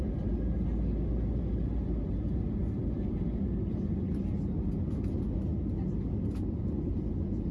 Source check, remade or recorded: recorded